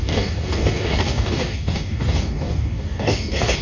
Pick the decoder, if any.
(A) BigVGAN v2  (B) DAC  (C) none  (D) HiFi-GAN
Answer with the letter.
B